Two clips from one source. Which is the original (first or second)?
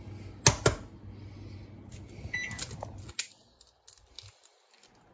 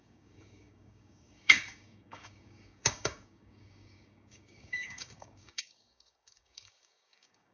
first